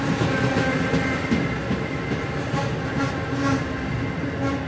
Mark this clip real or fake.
real